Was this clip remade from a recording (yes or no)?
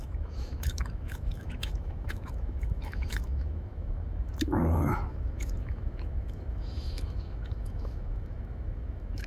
yes